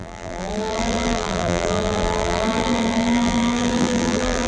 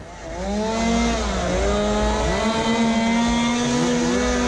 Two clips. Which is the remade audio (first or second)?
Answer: first